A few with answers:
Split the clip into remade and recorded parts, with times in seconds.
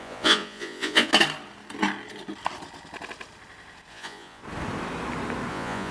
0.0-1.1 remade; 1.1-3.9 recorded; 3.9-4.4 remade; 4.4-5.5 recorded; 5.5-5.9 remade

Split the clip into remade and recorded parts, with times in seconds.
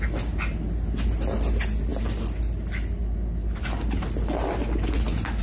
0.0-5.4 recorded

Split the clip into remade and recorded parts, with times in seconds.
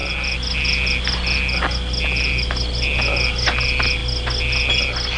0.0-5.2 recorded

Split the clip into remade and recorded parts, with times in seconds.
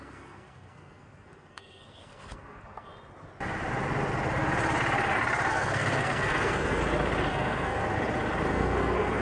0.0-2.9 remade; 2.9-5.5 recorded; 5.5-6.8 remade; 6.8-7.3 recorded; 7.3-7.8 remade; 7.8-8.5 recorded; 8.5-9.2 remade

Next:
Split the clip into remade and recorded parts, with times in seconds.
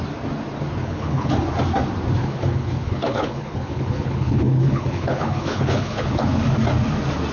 0.0-0.8 recorded; 0.8-1.3 remade; 1.3-2.2 recorded; 2.2-6.4 remade; 6.4-7.3 recorded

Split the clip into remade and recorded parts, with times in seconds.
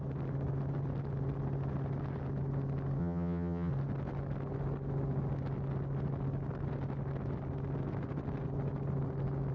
0.0-3.0 recorded; 3.0-3.7 remade; 3.7-9.5 recorded